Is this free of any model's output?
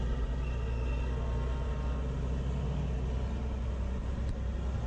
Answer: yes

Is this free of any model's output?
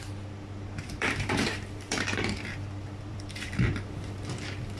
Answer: no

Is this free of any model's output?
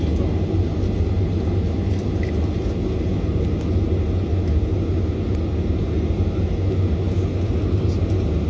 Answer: yes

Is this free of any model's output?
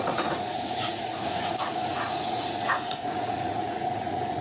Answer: no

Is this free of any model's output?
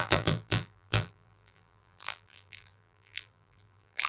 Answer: no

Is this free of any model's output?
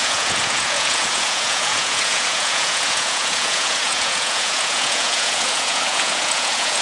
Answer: no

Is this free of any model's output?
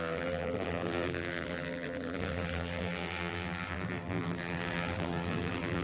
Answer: no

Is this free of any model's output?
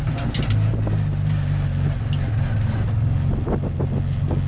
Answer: yes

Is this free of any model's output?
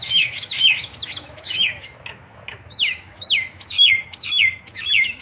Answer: no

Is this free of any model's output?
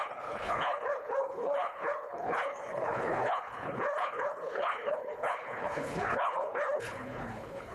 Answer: no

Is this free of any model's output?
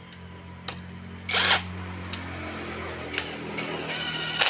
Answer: yes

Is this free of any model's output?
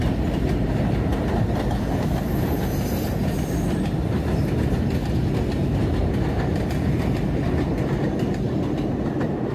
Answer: yes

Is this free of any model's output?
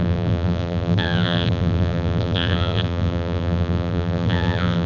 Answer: no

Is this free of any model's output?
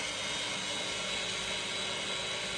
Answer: yes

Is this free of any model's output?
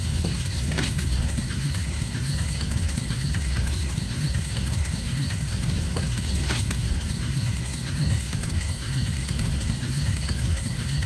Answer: no